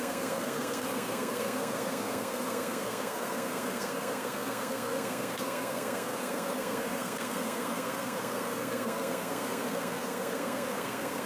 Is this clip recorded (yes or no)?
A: no